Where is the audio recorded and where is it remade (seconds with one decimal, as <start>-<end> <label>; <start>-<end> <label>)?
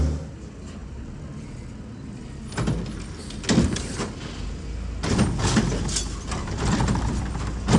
0.0-7.8 recorded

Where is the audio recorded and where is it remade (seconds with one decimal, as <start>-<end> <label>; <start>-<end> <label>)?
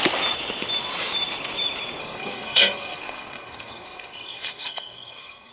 0.0-2.0 recorded; 2.0-5.5 remade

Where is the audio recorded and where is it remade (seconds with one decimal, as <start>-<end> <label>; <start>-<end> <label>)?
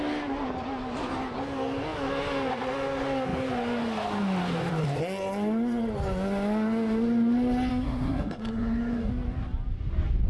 0.0-7.7 recorded; 7.7-9.1 remade; 9.1-10.3 recorded